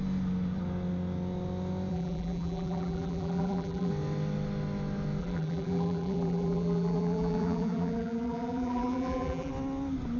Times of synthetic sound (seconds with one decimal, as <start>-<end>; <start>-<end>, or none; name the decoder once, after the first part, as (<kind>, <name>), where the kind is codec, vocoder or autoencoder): 1.9-3.9 (vocoder, BigVGAN v2); 5.2-9.5